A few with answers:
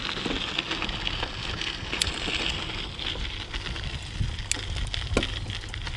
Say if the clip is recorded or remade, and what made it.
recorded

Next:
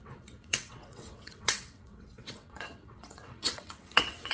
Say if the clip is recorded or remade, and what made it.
remade, vocoder, WaveNeXt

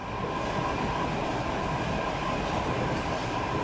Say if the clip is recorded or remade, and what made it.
recorded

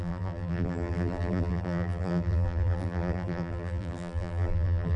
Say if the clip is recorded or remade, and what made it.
remade, vocoder, BigVGAN v2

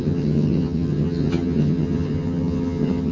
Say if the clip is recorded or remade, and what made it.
remade, vocoder, HiFi-GAN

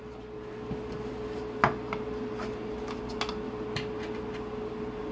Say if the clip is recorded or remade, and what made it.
recorded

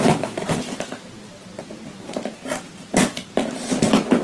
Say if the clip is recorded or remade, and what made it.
recorded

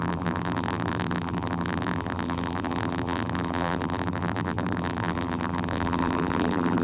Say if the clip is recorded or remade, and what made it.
remade, vocoder, BigVGAN v2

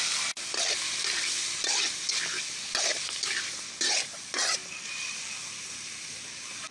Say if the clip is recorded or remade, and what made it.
recorded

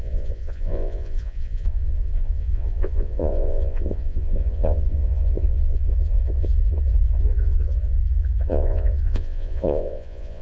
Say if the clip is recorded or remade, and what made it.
remade, vocoder, Vocos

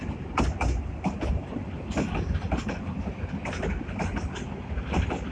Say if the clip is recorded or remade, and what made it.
recorded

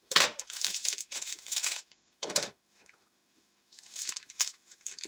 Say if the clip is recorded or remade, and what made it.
remade, autoencoder, DAC-VAE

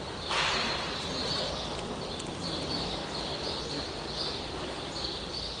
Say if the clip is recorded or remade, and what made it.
recorded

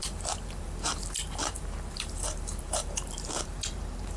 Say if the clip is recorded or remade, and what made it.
remade, vocoder, BigVGAN v2